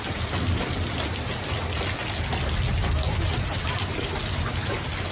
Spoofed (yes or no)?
no